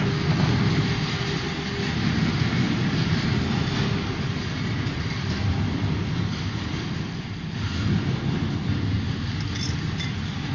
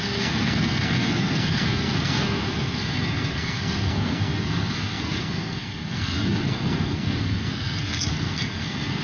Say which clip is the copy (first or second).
second